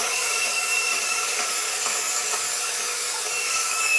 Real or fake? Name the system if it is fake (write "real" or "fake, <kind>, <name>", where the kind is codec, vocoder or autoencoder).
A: fake, codec, DAC